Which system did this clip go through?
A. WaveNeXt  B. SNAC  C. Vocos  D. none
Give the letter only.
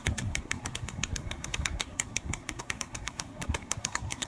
B